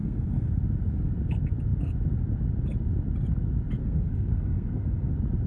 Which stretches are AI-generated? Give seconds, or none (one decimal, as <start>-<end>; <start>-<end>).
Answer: 0.0-0.5; 3.8-5.1